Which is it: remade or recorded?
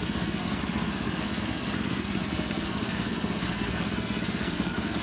remade